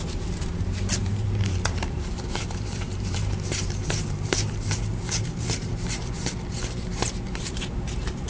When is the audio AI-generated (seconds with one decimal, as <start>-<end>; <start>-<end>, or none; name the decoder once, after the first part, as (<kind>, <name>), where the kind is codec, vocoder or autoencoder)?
0.0-8.3 (vocoder, BigVGAN v2)